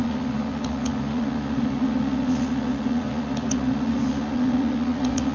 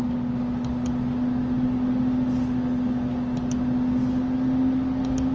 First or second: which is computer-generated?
first